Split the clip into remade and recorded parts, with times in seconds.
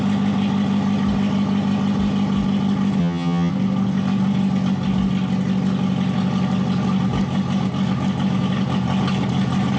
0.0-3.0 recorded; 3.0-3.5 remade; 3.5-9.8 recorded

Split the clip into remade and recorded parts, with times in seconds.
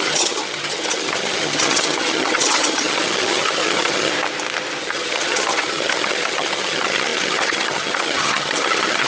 0.0-4.1 remade; 4.1-4.8 recorded; 4.8-9.1 remade